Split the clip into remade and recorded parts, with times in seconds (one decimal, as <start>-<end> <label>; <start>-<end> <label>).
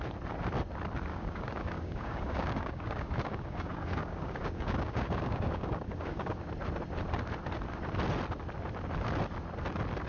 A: 0.0-1.1 recorded; 1.1-6.4 remade; 6.4-10.1 recorded